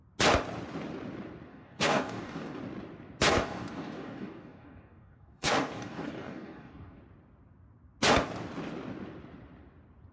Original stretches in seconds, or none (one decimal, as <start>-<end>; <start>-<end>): 0.0-1.5; 2.6-3.3; 7.0-10.1